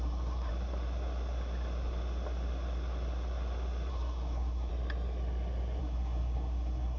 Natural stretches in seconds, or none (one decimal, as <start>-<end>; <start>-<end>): 0.5-3.9; 4.7-5.8